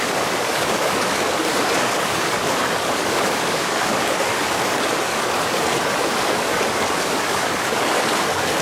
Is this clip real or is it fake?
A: fake